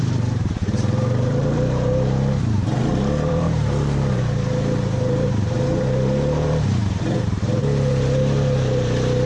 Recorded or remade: remade